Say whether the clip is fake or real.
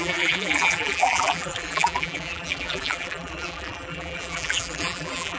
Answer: fake